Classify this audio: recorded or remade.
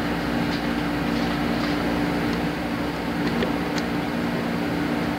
recorded